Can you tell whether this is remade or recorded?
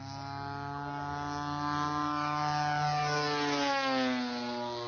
recorded